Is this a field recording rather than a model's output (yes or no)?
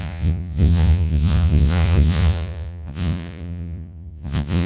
no